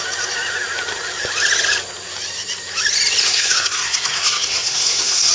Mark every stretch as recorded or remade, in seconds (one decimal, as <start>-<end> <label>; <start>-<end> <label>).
0.0-3.2 recorded; 3.2-5.3 remade